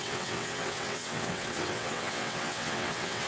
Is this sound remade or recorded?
remade